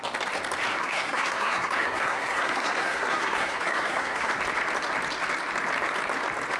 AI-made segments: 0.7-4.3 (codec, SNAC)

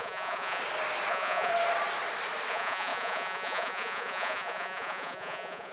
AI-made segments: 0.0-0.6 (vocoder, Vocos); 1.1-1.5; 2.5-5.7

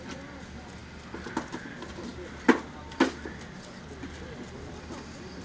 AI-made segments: none

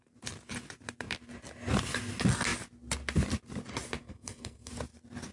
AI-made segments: 4.0-4.7 (codec, SNAC)

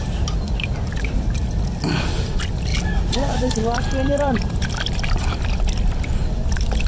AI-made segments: 0.0-1.4 (vocoder, BigVGAN v2); 2.7-6.9

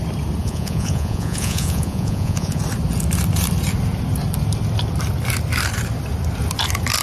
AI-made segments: 0.4-2.6 (vocoder, Vocos)

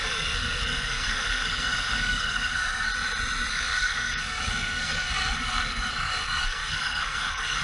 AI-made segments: 0.0-2.9 (codec, SNAC); 3.5-7.6